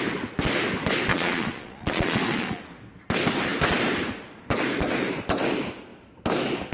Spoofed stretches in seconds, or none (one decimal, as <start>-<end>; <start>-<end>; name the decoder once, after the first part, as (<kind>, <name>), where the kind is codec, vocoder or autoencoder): 1.1-2.6 (vocoder, Vocos)